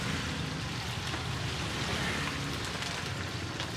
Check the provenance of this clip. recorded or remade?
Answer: recorded